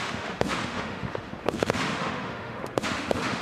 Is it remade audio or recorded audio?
remade